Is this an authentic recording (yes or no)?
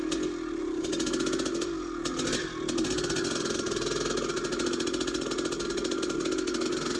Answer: yes